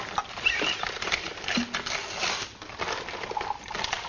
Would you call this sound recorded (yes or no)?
yes